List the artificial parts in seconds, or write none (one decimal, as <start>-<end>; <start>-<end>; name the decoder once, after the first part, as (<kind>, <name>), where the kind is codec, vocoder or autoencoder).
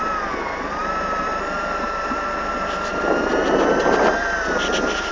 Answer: 0.0-2.9 (vocoder, BigVGAN v2); 4.2-5.1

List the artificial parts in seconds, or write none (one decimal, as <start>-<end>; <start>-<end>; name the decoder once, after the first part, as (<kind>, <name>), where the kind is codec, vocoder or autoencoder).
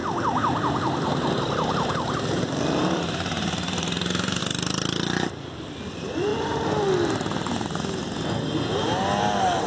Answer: 1.4-4.4 (vocoder, BigVGAN v2); 5.5-6.3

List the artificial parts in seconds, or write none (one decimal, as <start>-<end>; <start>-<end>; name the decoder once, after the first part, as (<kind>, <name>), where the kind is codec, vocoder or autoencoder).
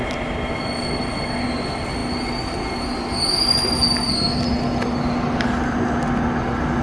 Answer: none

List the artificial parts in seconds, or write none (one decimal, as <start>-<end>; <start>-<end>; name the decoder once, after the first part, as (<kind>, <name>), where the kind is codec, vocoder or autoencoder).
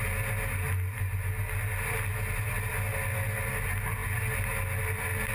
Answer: none